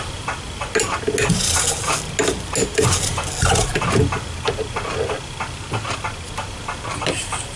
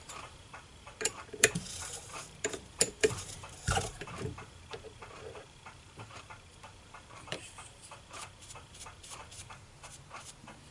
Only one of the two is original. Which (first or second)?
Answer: first